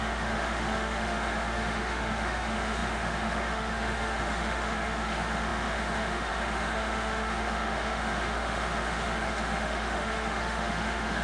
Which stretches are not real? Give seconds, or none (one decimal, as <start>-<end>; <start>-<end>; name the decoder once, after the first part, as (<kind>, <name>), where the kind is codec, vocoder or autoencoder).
0.0-11.2 (autoencoder, DAC-VAE)